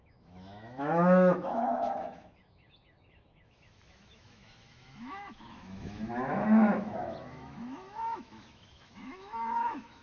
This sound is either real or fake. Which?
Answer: fake